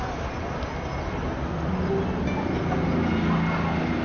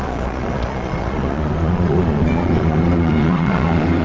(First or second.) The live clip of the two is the first